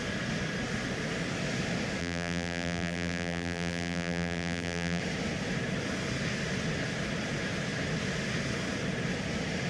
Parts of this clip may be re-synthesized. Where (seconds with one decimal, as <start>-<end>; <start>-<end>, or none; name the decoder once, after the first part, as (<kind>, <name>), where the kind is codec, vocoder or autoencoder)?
2.0-5.0 (vocoder, BigVGAN v2)